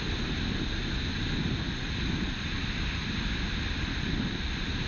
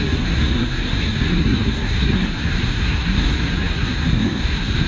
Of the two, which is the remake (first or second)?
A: second